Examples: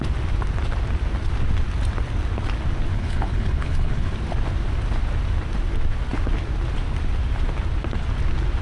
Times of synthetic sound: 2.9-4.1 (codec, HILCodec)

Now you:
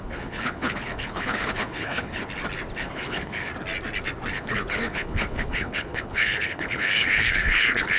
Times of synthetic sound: 0.0-2.2 (codec, HILCodec); 2.8-3.5; 4.3-8.0

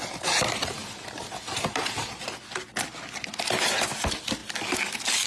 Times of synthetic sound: none

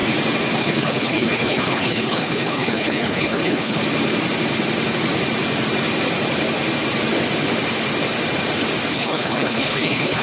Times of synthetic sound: 0.6-3.8 (codec, HILCodec); 8.9-10.2

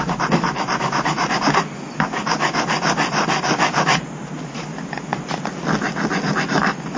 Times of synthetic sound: none

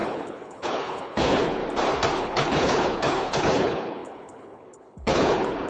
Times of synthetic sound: 0.0-1.6 (codec, HILCodec); 2.2-5.7

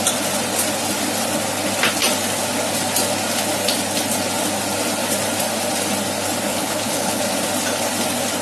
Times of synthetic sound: 6.5-7.2 (codec, HILCodec)

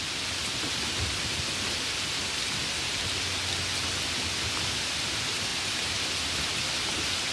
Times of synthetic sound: none